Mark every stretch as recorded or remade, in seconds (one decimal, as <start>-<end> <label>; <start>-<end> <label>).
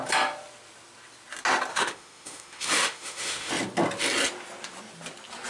0.0-1.7 recorded; 1.7-3.5 remade; 3.5-5.5 recorded